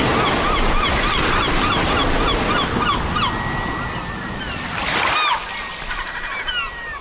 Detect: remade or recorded recorded